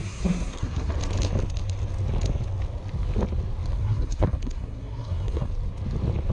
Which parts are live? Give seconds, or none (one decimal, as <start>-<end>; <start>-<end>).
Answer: 0.9-3.7; 5.5-6.3